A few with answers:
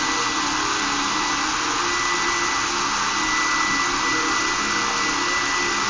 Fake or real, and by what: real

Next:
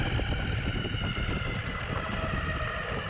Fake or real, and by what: real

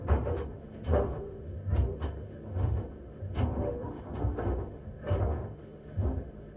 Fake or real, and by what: fake, autoencoder, DAC-VAE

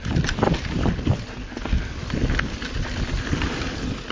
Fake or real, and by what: real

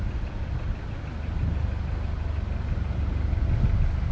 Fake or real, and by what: real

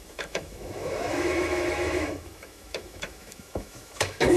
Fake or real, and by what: fake, autoencoder, DAC-VAE